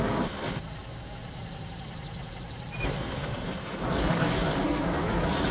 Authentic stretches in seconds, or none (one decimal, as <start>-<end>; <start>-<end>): 0.0-1.4; 4.7-5.5